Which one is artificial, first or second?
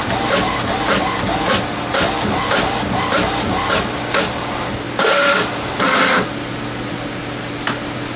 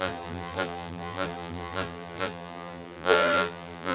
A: second